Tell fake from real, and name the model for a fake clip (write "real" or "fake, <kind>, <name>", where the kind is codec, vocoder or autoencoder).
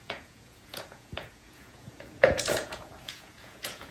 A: fake, vocoder, Vocos